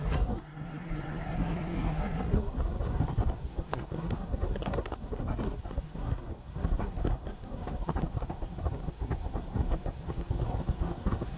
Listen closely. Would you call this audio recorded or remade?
remade